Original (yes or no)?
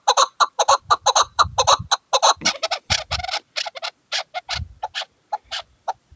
yes